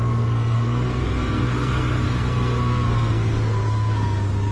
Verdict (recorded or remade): remade